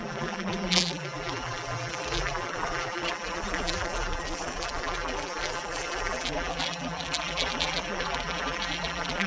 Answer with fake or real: fake